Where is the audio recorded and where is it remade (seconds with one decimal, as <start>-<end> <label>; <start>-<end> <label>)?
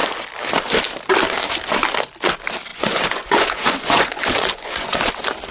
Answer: 0.0-2.7 recorded; 2.7-5.1 remade; 5.1-5.5 recorded